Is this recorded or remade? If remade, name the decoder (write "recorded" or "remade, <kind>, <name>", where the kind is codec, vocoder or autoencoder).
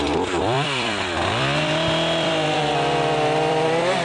remade, vocoder, BigVGAN v2